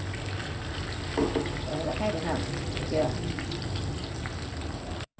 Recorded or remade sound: recorded